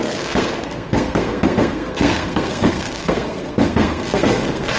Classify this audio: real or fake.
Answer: fake